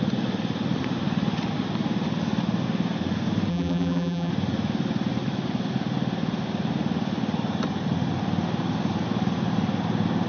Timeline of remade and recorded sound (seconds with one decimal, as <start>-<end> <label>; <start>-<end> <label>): 0.0-3.5 recorded; 3.5-4.3 remade; 4.3-10.3 recorded